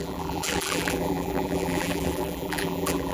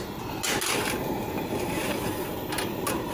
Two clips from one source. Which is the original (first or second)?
second